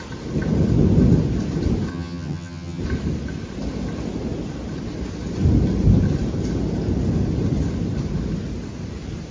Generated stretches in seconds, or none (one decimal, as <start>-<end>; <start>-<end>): 1.9-2.8